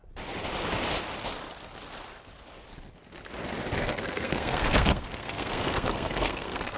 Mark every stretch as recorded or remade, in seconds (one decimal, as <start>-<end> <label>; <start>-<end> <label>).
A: 0.0-3.8 recorded; 3.8-6.8 remade

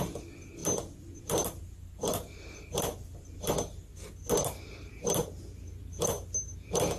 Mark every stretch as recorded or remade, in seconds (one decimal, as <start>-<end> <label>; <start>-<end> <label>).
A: 0.0-7.0 recorded

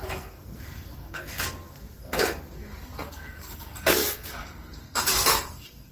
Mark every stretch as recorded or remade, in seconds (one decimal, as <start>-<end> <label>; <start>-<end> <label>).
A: 0.0-5.9 remade

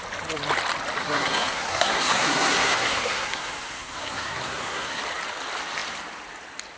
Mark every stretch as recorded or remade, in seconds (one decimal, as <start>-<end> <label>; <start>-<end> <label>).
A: 0.0-1.0 recorded; 1.0-5.0 remade; 5.0-6.8 recorded

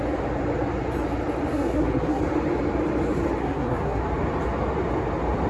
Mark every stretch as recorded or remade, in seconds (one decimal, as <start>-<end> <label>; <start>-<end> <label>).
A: 0.0-1.5 recorded; 1.5-2.2 remade; 2.2-3.4 recorded; 3.4-4.0 remade; 4.0-5.5 recorded

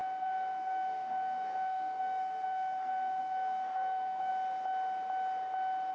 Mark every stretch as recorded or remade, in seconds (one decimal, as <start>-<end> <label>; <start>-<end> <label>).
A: 0.0-4.3 remade; 4.3-5.9 recorded